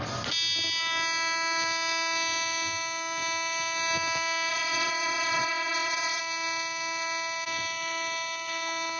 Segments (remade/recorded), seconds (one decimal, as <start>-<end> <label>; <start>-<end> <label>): 0.0-4.5 recorded; 4.5-6.2 remade; 6.2-9.0 recorded